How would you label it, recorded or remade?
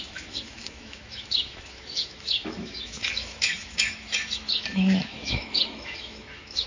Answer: remade